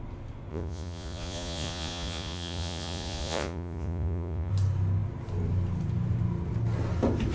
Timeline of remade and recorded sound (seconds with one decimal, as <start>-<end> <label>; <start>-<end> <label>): 0.0-0.5 recorded; 0.5-4.5 remade; 4.5-7.3 recorded